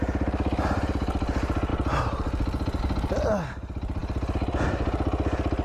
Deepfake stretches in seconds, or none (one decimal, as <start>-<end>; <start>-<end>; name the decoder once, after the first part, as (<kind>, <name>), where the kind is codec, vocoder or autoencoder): none